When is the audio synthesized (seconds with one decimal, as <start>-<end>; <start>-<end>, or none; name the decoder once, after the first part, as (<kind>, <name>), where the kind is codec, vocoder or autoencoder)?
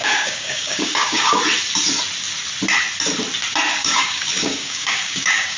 0.0-1.4 (codec, DAC); 3.7-5.6